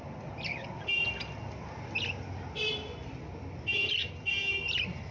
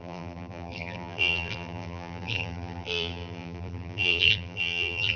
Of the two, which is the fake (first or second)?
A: second